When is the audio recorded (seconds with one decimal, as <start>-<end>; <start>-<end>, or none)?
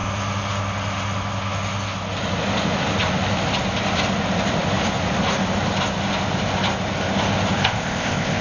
0.0-7.6